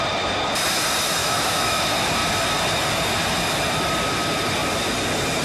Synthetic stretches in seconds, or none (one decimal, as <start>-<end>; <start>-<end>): 1.2-1.8